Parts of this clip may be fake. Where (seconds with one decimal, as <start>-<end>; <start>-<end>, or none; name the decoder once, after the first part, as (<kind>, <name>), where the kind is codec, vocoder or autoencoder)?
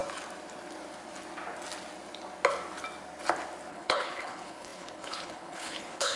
3.7-6.2 (codec, HILCodec)